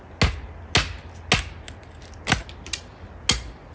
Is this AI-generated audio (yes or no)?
no